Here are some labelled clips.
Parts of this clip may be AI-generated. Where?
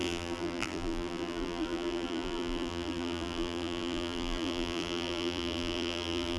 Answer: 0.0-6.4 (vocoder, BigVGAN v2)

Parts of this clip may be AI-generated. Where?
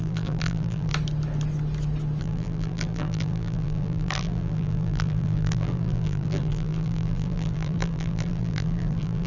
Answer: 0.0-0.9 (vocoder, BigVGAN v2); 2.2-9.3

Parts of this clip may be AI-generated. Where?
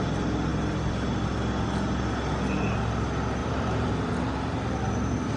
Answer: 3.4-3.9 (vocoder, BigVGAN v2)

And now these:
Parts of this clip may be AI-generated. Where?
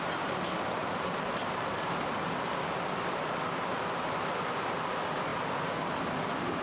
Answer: 0.8-2.2 (vocoder, BigVGAN v2); 3.7-4.6